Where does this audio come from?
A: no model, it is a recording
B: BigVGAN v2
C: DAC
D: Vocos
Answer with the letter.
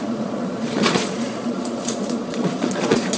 D